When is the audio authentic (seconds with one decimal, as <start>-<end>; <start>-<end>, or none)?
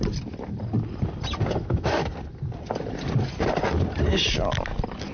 0.0-1.6; 2.1-5.1